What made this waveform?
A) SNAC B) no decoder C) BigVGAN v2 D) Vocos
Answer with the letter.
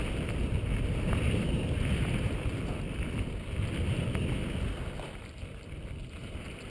B